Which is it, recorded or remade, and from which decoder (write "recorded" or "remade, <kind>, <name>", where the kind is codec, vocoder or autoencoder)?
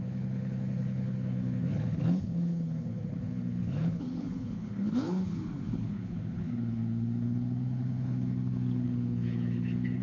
remade, codec, HILCodec